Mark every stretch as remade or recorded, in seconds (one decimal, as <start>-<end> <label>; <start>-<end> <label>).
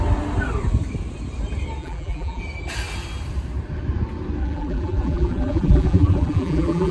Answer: 0.0-1.8 recorded; 1.8-2.4 remade; 2.4-4.4 recorded; 4.4-6.9 remade